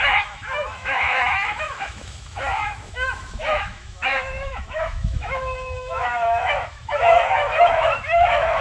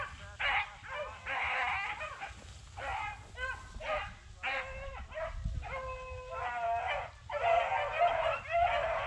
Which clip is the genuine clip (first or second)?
second